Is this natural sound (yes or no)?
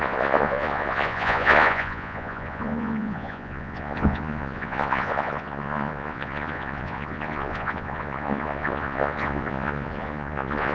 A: no